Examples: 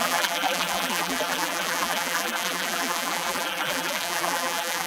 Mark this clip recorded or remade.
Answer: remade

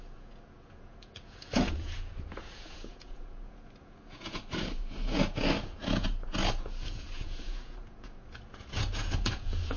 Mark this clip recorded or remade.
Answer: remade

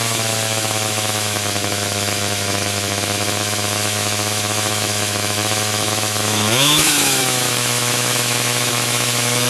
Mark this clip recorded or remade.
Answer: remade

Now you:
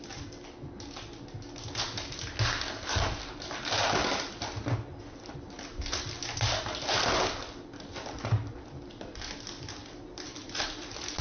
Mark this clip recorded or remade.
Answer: recorded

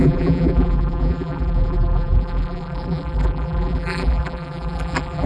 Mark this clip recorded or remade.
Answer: remade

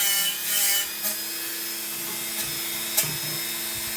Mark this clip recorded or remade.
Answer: recorded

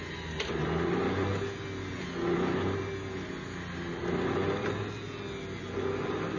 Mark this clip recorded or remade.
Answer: recorded